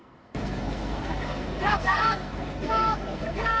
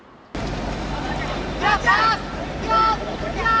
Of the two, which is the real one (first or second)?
second